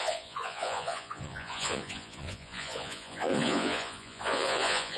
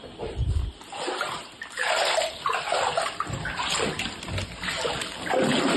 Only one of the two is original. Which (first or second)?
second